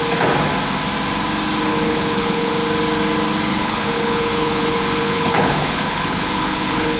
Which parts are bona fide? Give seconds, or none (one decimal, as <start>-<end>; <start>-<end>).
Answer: 0.0-1.7; 2.5-3.5

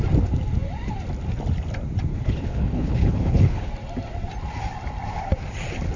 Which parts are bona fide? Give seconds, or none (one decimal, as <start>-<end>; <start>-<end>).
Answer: 0.0-2.1; 3.7-6.0

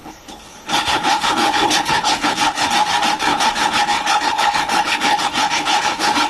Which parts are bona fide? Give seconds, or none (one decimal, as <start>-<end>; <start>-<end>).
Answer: 2.7-3.3